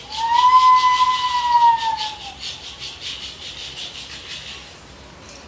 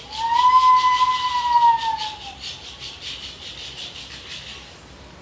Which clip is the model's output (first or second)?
second